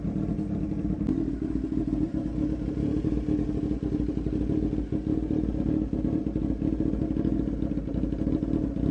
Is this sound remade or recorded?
recorded